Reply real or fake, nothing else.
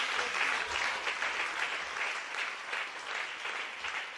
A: real